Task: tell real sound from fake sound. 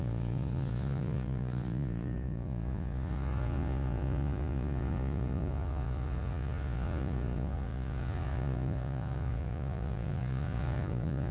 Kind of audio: fake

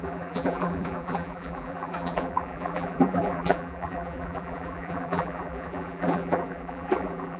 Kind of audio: fake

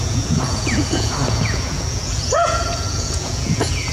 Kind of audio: fake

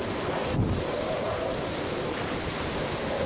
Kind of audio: real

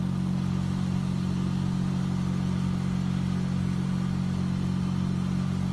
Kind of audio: real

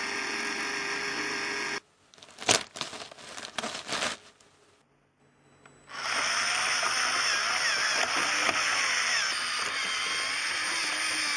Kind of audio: real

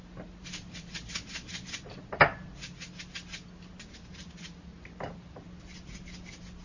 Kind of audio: real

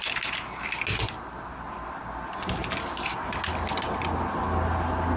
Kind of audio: real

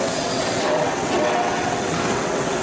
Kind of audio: fake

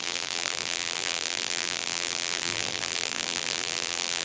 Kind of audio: fake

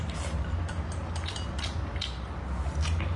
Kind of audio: real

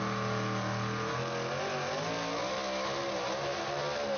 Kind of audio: real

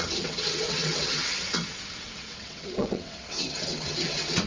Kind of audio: fake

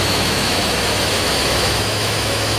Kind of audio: fake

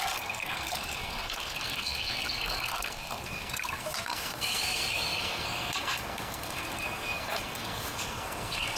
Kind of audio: fake